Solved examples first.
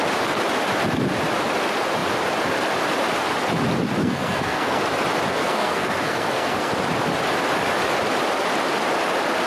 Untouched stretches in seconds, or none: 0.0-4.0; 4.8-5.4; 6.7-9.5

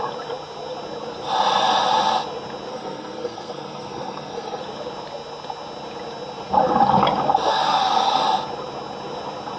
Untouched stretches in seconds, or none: 0.0-2.7; 4.6-7.5; 8.2-9.6

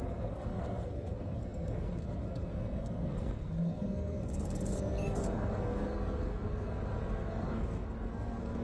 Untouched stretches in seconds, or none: none